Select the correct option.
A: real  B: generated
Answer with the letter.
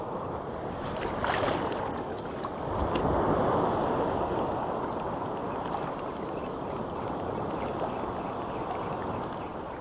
A